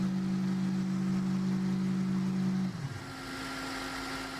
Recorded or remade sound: recorded